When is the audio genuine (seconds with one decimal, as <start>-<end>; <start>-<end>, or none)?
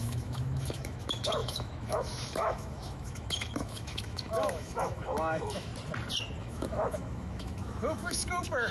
5.7-6.4